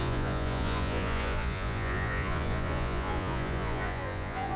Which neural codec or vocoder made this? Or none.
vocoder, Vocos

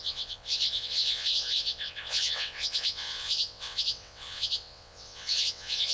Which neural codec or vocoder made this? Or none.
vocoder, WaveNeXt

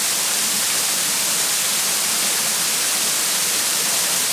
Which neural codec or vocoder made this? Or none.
none